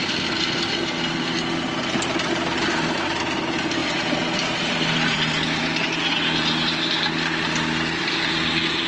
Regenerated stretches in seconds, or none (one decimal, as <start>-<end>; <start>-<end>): none